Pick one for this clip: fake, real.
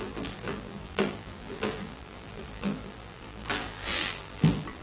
fake